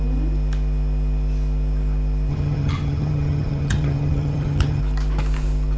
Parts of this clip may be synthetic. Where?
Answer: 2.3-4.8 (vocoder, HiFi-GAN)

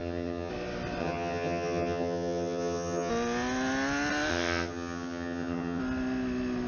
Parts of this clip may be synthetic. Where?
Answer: 0.0-0.5 (vocoder, HiFi-GAN); 1.0-3.1; 4.3-5.8

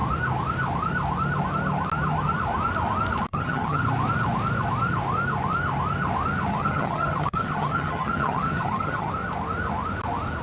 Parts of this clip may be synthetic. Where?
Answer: 3.3-3.8 (vocoder, HiFi-GAN); 6.5-9.1

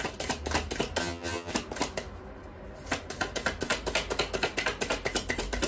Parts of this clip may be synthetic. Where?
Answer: 1.0-1.5 (vocoder, HiFi-GAN)

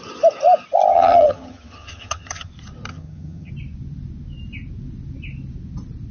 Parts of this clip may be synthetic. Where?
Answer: 0.9-2.5 (vocoder, HiFi-GAN); 2.9-3.5

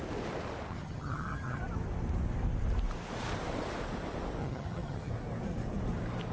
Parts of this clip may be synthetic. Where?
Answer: 0.7-1.6 (vocoder, HiFi-GAN); 4.4-5.1

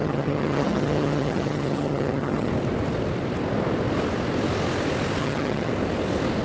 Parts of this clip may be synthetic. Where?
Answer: 0.0-2.5 (vocoder, HiFi-GAN); 5.2-5.7

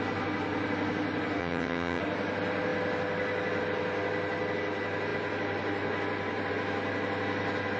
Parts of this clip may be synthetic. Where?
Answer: 1.4-2.0 (vocoder, HiFi-GAN)